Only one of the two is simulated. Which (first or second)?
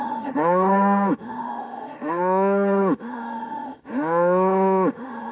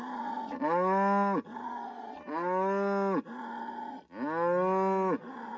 first